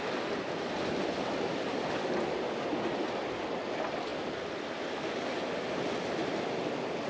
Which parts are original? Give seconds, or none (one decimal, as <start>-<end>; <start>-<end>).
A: 0.0-7.1